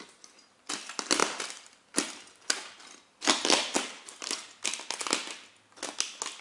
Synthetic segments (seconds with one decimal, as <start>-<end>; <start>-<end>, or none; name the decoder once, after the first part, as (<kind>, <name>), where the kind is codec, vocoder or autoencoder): none

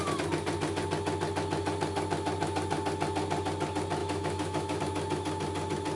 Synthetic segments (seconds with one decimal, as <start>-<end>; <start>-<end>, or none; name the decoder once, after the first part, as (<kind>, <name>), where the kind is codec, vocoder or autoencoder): 4.0-4.8 (autoencoder, DAC-VAE)

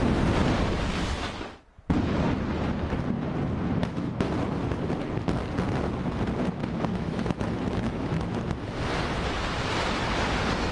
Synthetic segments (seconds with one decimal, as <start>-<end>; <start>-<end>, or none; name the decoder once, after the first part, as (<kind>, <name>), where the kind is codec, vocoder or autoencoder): 3.8-4.3 (autoencoder, DAC-VAE); 6.6-8.4